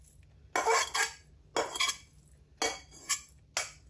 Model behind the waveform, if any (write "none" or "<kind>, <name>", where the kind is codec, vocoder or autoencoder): none